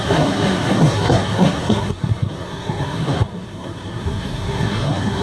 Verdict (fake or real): fake